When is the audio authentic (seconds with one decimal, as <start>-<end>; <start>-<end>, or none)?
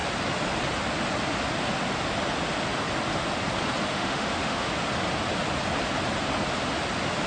0.0-3.9; 4.7-7.3